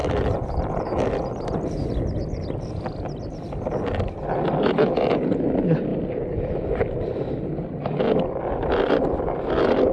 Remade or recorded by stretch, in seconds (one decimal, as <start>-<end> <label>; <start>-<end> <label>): 0.0-9.9 recorded